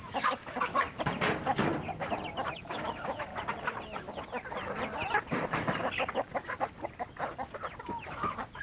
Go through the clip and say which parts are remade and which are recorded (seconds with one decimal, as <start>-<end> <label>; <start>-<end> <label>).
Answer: 0.0-0.7 remade; 0.7-2.7 recorded; 2.7-3.3 remade; 3.3-8.1 recorded; 8.1-8.6 remade